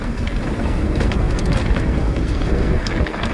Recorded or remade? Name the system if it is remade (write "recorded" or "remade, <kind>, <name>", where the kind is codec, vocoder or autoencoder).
remade, codec, SNAC